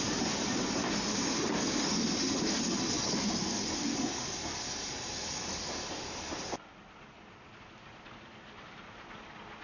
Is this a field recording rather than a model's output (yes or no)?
yes